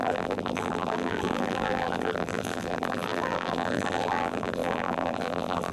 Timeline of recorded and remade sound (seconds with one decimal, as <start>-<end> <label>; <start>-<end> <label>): 0.0-5.7 remade